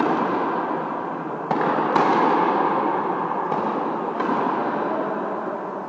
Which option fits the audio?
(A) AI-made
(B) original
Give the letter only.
B